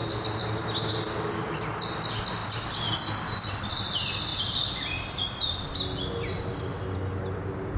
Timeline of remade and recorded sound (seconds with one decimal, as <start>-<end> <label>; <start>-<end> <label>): 0.0-2.4 recorded; 2.4-3.5 remade; 3.5-4.3 recorded; 4.3-5.6 remade; 5.6-7.8 recorded